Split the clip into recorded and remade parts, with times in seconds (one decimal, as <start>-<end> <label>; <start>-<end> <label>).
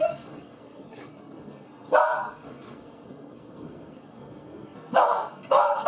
0.0-5.9 remade